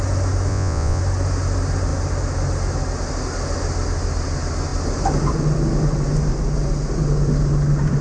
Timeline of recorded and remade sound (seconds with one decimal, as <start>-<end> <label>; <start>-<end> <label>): 0.0-0.5 recorded; 0.5-1.0 remade; 1.0-8.0 recorded